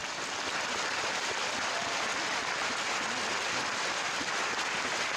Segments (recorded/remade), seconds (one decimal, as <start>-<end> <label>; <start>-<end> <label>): 0.0-5.2 recorded